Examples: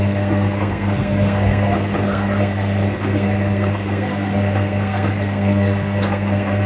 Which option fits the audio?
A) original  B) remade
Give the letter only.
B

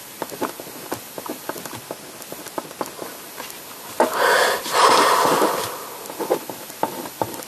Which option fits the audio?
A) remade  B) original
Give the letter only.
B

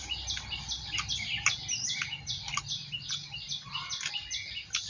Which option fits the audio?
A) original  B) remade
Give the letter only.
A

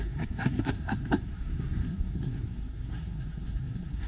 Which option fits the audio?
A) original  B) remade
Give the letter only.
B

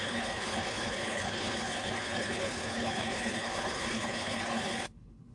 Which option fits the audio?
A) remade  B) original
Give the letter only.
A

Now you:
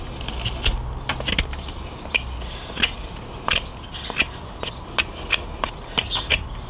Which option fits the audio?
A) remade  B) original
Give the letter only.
B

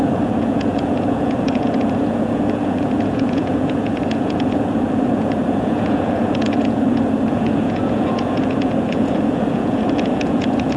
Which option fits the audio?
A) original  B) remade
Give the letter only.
B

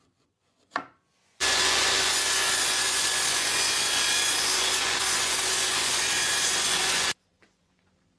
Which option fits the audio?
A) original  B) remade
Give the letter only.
B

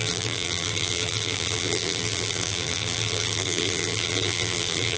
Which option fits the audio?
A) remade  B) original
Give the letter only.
A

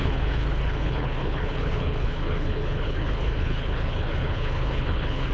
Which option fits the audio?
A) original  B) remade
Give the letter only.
B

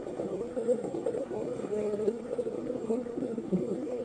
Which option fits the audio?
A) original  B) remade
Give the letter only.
B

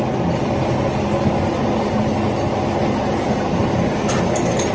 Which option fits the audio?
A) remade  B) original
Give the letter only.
B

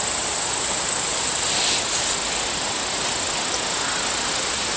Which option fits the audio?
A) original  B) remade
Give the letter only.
A